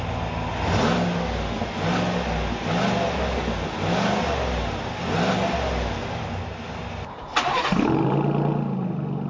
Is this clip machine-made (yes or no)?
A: no